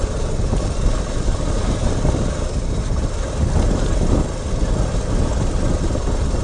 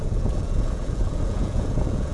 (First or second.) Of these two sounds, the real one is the first